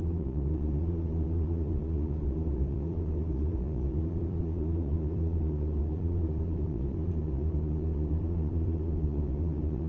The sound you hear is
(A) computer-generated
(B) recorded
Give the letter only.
A